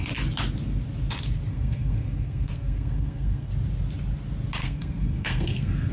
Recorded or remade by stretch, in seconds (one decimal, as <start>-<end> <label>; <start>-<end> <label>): 0.0-1.5 recorded; 1.5-3.5 remade; 3.5-4.6 recorded; 4.6-5.9 remade